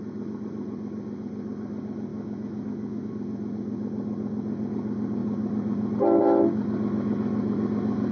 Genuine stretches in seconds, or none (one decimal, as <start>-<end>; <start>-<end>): 0.0-2.1; 3.1-8.1